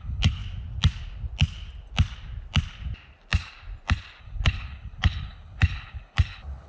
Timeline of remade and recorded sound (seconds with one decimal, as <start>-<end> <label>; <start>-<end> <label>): 0.0-0.4 remade; 0.4-4.2 recorded; 4.2-6.7 remade